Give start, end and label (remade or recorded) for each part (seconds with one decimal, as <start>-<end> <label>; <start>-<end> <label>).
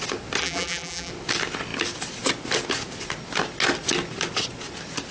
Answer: 0.0-0.4 recorded; 0.4-1.1 remade; 1.1-5.1 recorded